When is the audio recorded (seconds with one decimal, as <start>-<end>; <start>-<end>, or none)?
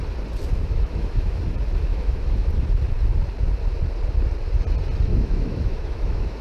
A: 0.0-0.6; 1.4-1.9; 2.5-5.1